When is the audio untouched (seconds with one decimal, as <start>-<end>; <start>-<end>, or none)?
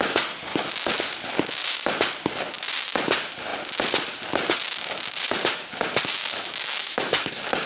0.0-0.5; 1.0-6.2; 7.3-7.7